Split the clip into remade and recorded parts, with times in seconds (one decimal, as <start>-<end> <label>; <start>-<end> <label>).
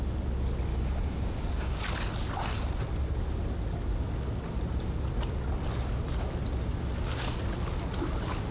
0.0-0.7 recorded; 0.7-1.8 remade; 1.8-8.5 recorded